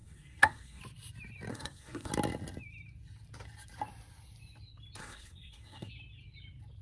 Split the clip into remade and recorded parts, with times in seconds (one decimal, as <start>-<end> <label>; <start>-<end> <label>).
0.0-0.8 remade; 0.8-1.5 recorded; 1.5-2.1 remade; 2.1-5.0 recorded; 5.0-5.9 remade; 5.9-6.8 recorded